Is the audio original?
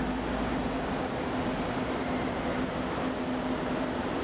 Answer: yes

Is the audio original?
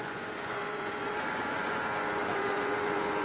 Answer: no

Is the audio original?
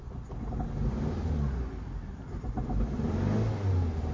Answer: yes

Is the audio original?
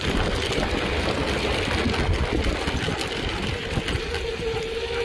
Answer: yes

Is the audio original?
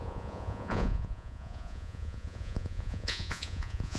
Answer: no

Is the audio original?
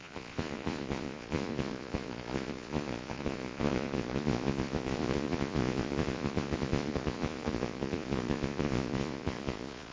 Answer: no